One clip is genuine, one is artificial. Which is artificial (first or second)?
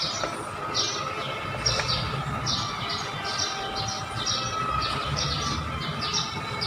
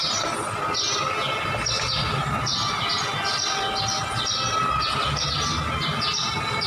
first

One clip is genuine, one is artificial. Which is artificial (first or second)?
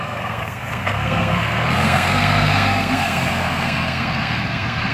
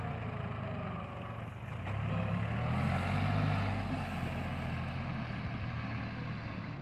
first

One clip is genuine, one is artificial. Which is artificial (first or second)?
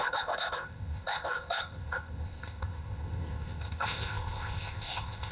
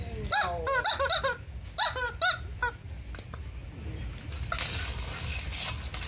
first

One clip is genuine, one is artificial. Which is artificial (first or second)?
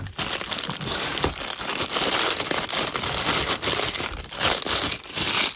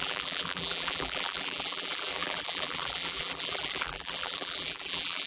second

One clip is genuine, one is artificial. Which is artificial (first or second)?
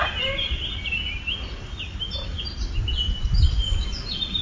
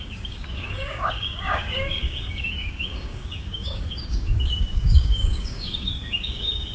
second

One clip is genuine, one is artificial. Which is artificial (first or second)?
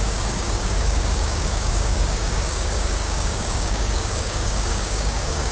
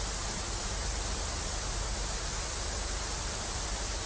first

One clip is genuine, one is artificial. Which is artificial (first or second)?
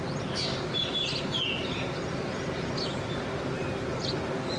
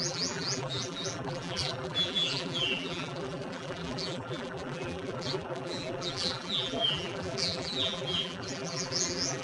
second